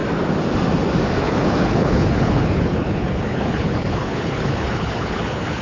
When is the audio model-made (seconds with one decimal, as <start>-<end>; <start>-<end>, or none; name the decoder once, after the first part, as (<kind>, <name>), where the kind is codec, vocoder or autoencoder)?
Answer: 1.2-5.6 (codec, HILCodec)